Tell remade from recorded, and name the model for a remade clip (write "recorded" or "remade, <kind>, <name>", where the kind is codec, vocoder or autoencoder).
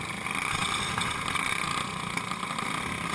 recorded